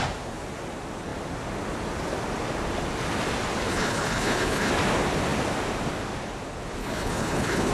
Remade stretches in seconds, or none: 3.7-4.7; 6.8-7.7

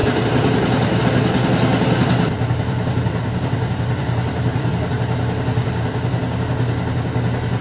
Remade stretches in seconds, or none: 0.0-1.0; 1.7-4.9; 5.6-6.2